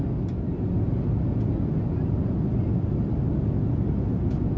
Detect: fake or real real